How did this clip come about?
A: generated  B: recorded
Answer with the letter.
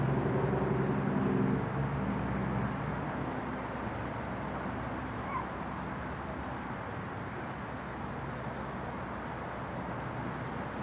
B